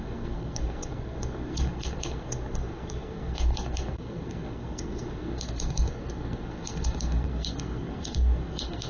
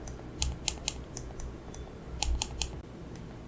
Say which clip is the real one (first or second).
second